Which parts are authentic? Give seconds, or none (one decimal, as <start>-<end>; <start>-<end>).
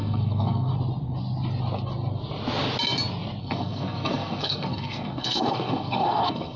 0.7-3.4